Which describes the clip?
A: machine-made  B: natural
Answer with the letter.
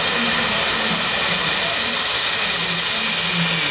B